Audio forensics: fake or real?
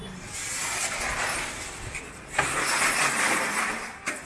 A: real